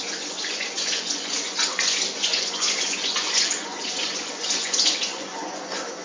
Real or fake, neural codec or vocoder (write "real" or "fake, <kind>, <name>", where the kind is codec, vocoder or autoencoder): fake, vocoder, Vocos